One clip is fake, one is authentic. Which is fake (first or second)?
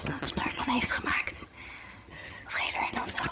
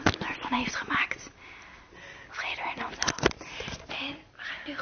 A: first